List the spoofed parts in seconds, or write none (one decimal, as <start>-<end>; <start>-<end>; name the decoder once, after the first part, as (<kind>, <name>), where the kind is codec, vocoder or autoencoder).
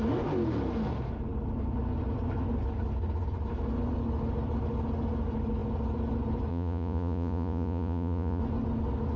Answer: 6.5-8.4 (vocoder, Vocos)